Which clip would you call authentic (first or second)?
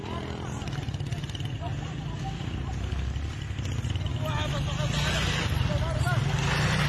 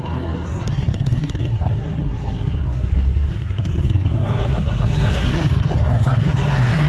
first